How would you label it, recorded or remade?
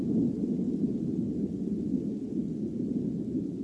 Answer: recorded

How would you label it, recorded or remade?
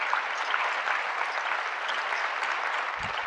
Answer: recorded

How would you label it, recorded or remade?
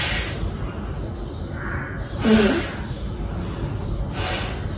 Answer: recorded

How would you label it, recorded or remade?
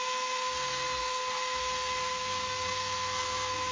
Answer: remade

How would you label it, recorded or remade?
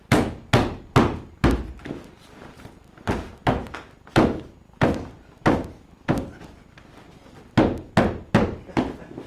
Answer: recorded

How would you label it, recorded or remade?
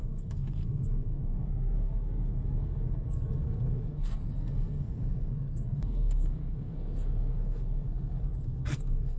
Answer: remade